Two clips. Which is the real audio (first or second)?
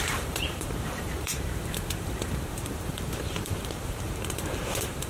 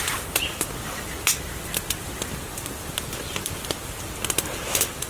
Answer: second